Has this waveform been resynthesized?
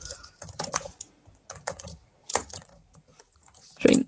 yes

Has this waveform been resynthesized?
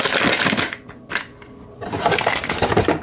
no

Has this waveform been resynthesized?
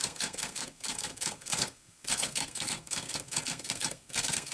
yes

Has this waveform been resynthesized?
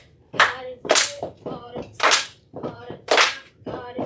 yes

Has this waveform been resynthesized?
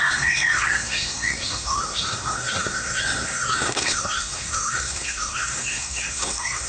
yes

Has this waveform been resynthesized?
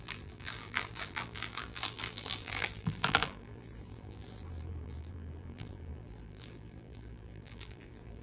yes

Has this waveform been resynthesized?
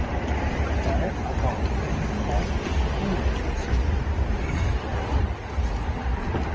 no